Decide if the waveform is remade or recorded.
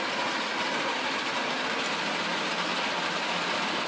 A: recorded